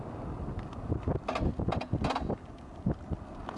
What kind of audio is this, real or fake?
real